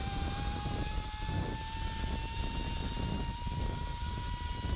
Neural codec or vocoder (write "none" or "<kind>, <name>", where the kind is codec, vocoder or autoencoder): none